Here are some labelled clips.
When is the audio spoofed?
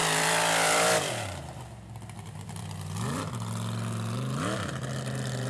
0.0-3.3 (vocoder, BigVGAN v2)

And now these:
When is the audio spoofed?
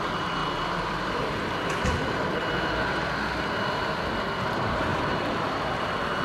0.4-3.4 (vocoder, BigVGAN v2); 4.9-5.8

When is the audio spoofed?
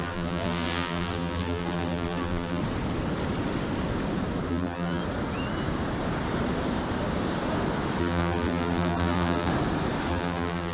0.0-2.6 (vocoder, BigVGAN v2); 4.5-5.0; 8.0-9.5; 10.1-10.7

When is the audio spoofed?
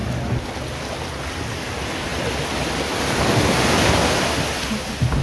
0.0-0.6 (vocoder, BigVGAN v2)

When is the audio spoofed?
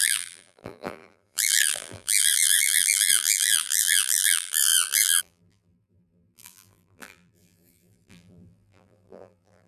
0.0-9.7 (vocoder, BigVGAN v2)